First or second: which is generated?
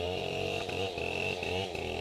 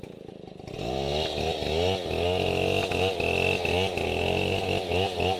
first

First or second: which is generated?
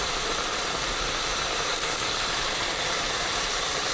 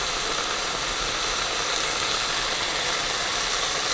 first